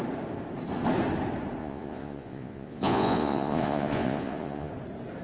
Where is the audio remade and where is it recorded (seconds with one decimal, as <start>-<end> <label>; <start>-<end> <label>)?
0.0-1.6 recorded; 1.6-4.7 remade; 4.7-5.2 recorded